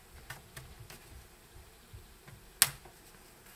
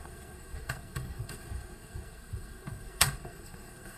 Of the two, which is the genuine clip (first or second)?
first